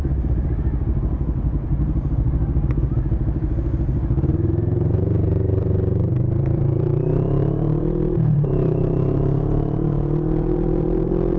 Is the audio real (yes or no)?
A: no